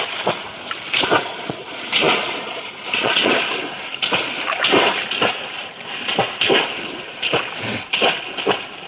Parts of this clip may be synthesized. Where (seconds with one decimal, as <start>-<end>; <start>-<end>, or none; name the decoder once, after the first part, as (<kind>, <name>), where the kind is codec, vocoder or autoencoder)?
1.3-3.4 (vocoder, Vocos)